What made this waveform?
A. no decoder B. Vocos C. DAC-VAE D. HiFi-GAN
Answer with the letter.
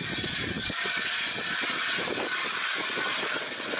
A